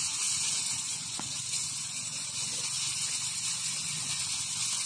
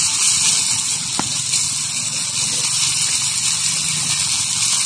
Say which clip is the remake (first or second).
first